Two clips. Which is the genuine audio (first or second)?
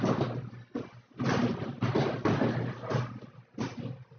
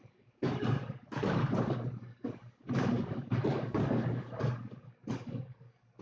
first